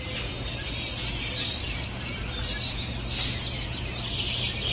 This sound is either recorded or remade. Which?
recorded